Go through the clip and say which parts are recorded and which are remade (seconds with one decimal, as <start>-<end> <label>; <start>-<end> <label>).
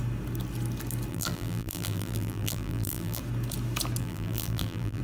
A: 0.0-1.1 recorded; 1.1-3.2 remade; 3.2-4.0 recorded; 4.0-5.0 remade